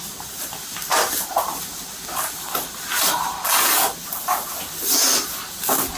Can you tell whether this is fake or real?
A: real